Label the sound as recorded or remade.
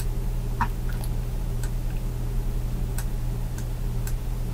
recorded